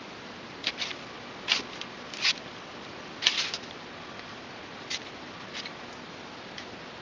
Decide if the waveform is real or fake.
real